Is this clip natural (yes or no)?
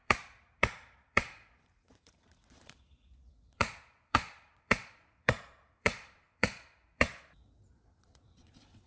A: no